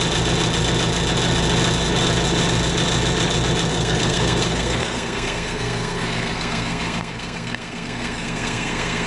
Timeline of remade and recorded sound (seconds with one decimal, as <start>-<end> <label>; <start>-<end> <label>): 0.0-3.7 recorded; 3.7-9.1 remade